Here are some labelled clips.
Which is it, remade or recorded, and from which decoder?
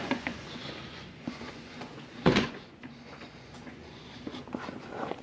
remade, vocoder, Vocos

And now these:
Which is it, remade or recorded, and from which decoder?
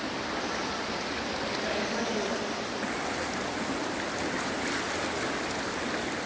recorded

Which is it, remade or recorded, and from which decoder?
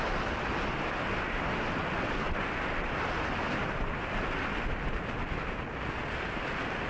recorded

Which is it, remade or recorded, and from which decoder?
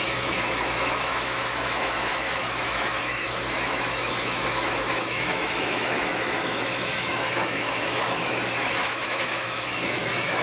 remade, autoencoder, DAC-VAE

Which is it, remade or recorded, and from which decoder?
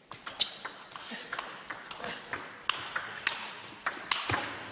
recorded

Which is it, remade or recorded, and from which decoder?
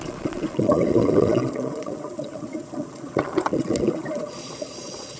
remade, vocoder, Vocos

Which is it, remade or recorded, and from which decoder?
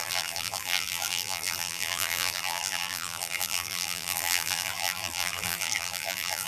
remade, vocoder, BigVGAN v2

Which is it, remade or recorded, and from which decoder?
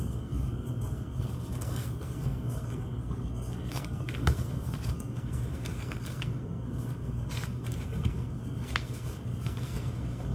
remade, codec, SNAC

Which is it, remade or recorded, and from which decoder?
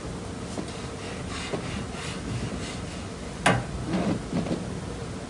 recorded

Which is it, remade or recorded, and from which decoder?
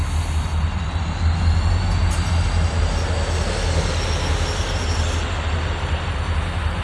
recorded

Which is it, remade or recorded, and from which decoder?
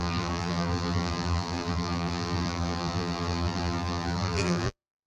remade, vocoder, BigVGAN v2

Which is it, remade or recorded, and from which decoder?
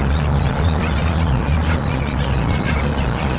remade, vocoder, Vocos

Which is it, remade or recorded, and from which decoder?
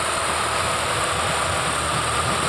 recorded